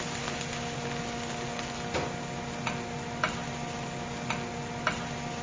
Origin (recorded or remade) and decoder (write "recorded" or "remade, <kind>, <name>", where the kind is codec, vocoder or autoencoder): recorded